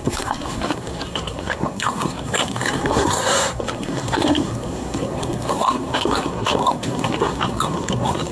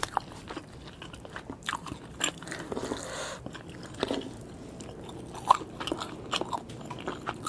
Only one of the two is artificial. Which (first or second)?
first